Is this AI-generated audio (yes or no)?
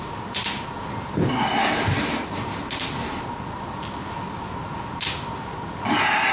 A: no